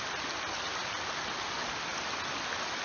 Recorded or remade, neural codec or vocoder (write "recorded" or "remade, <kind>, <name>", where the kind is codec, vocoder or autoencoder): recorded